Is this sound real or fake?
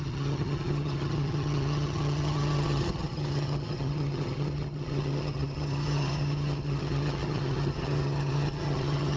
fake